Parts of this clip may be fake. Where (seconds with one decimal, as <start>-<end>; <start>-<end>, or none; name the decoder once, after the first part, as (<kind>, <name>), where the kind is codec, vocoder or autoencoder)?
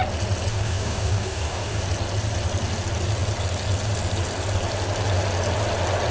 0.5-1.8 (codec, DAC)